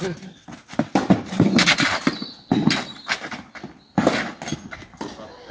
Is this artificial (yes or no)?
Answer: no